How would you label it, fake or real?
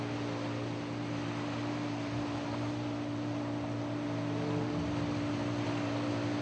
real